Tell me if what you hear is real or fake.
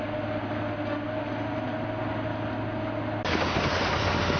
real